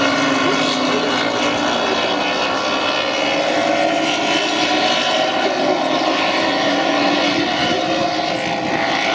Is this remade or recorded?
recorded